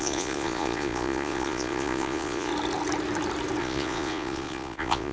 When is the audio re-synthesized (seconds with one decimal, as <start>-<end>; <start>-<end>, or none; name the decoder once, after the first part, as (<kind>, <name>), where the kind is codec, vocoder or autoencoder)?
0.0-2.5 (vocoder, Vocos); 3.6-5.1